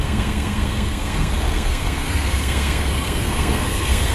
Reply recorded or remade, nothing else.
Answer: remade